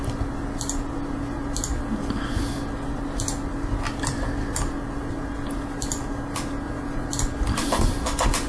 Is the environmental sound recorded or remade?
recorded